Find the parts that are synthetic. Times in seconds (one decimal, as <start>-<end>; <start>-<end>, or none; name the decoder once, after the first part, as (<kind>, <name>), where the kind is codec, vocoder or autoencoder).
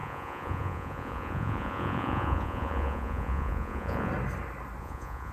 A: 0.0-4.1 (vocoder, Vocos); 4.8-5.3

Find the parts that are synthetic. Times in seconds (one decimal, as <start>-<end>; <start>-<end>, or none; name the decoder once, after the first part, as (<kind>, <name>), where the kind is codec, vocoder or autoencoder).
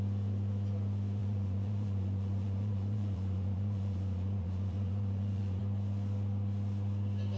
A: 1.2-5.6 (vocoder, Vocos)